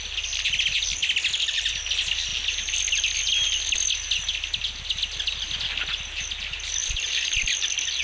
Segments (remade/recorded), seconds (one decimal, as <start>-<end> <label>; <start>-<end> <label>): 0.0-1.0 recorded; 1.0-1.6 remade; 1.6-6.8 recorded; 6.8-8.0 remade